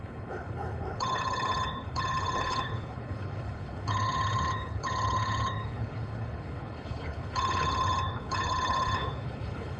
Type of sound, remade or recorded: remade